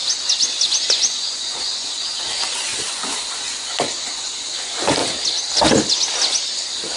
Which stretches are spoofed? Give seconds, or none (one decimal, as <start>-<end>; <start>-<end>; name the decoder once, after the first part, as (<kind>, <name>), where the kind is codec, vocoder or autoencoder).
0.8-5.0 (vocoder, Vocos)

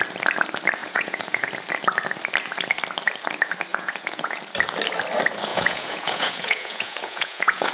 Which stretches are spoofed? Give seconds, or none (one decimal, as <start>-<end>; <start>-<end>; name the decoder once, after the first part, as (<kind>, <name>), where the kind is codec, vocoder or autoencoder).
0.8-1.5 (vocoder, Vocos); 3.7-4.4; 5.5-7.7

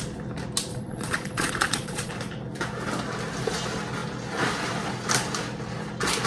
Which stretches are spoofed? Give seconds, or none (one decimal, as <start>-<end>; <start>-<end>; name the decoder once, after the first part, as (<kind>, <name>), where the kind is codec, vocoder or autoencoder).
0.7-2.1 (vocoder, Vocos)

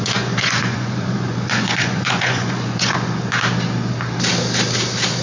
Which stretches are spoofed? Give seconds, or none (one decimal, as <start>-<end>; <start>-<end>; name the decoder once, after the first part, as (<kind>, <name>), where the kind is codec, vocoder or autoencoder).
0.0-3.3 (vocoder, Vocos)

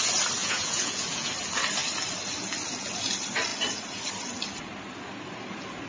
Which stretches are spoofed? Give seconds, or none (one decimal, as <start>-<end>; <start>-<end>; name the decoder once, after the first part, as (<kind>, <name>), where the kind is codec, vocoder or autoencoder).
0.4-1.3 (vocoder, Vocos)

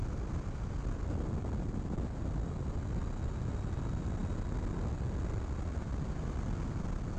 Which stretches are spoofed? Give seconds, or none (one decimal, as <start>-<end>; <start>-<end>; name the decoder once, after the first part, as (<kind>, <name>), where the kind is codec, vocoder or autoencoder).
none

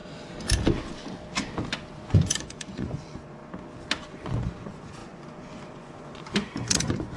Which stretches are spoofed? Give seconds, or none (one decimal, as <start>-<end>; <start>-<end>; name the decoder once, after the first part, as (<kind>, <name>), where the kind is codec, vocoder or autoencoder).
1.7-3.4 (vocoder, Vocos); 4.0-7.2

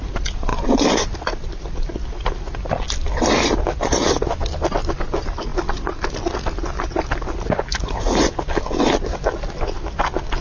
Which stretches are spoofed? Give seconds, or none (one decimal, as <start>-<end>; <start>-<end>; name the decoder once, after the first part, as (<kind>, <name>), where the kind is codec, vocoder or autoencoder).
7.7-8.5 (vocoder, Vocos)